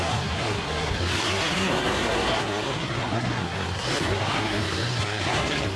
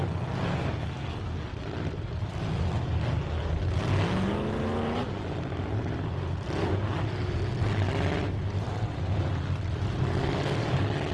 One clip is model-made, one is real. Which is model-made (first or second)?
first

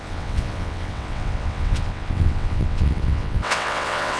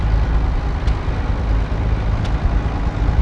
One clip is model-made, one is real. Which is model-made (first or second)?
first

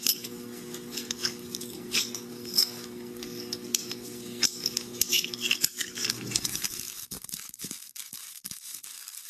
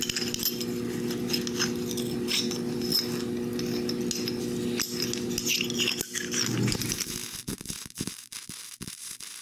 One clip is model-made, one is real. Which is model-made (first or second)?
first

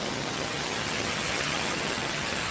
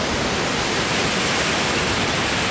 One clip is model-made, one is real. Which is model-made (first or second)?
first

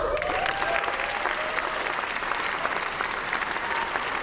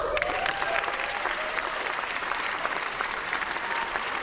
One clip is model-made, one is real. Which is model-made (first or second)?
second